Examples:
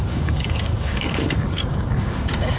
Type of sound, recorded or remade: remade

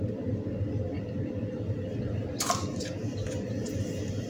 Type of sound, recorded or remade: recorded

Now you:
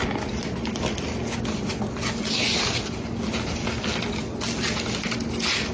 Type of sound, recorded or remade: recorded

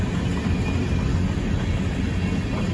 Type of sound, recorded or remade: recorded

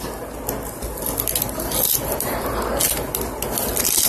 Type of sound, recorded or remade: recorded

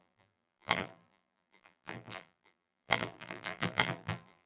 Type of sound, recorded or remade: remade